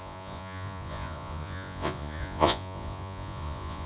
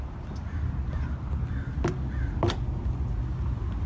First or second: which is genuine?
second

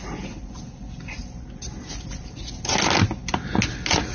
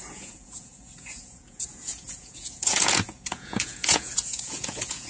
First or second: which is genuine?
first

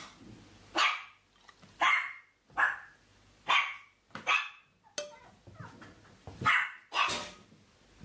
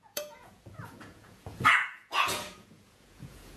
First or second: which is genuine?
first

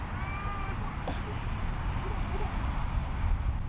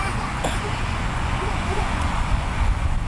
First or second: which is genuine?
first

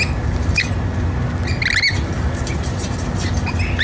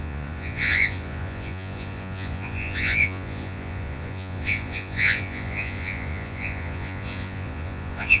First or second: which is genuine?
first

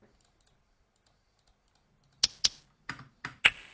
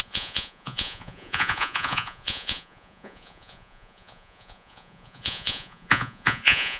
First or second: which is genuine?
first